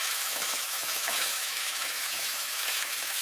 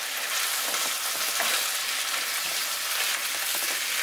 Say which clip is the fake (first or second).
first